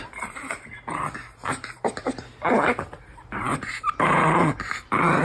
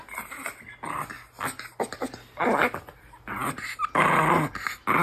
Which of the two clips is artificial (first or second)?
first